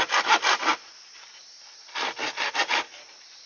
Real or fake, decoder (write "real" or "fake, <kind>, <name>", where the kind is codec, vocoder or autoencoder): fake, vocoder, BigVGAN v2